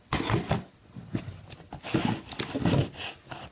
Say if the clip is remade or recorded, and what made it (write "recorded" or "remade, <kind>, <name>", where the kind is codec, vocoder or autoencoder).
recorded